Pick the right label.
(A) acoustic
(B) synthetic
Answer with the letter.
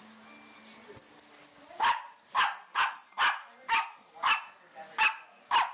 A